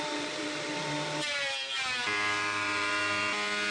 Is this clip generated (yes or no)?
yes